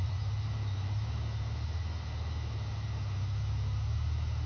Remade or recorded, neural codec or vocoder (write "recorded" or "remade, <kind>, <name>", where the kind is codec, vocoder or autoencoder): recorded